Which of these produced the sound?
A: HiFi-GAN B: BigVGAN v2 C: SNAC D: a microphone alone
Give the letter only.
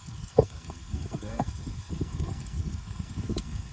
C